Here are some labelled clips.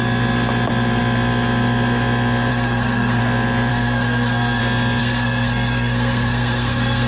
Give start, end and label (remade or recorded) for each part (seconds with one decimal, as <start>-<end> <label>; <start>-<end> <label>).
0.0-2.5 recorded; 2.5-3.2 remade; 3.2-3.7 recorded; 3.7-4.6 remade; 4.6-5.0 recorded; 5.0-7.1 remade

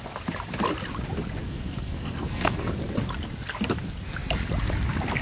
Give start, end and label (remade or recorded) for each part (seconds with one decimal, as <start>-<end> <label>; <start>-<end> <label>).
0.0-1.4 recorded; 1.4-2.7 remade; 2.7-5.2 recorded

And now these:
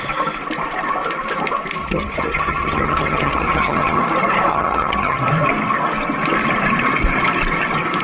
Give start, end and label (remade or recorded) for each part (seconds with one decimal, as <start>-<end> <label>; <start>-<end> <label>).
0.0-1.8 recorded; 1.8-4.0 remade; 4.0-4.5 recorded; 4.5-5.2 remade; 5.2-8.0 recorded